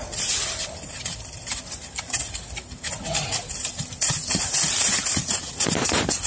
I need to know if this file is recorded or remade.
recorded